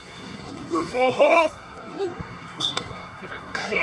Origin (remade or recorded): remade